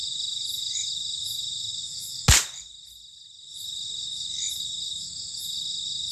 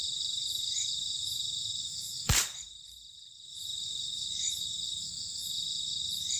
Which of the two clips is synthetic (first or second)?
second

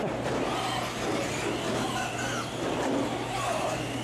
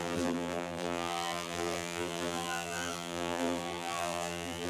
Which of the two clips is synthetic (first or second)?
second